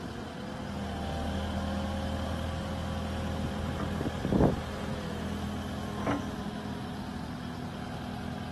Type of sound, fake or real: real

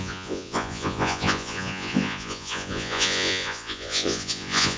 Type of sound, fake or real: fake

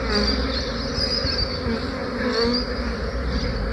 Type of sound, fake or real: real